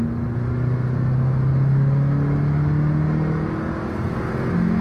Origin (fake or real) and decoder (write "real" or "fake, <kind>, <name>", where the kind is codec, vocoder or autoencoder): real